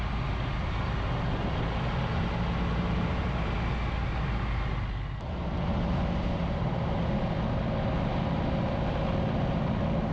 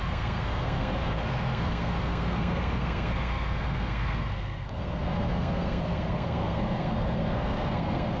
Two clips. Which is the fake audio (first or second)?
second